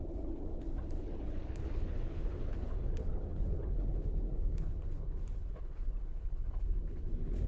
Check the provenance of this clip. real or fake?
fake